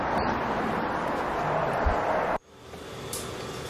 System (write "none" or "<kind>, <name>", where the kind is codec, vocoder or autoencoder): none